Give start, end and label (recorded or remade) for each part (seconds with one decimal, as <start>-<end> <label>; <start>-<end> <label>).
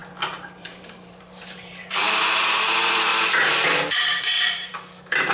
0.0-0.6 recorded; 0.6-3.1 remade; 3.1-3.8 recorded; 3.8-4.7 remade; 4.7-5.3 recorded